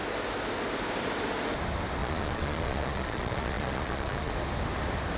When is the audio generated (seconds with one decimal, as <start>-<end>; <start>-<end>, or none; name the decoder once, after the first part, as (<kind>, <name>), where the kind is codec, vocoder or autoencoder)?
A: 2.0-4.3 (vocoder, Vocos)